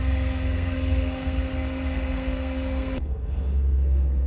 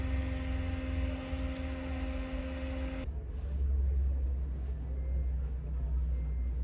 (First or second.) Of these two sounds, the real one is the second